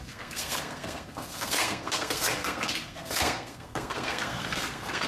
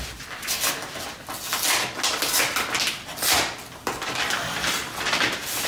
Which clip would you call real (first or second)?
second